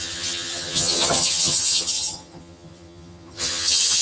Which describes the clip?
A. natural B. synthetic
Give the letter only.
B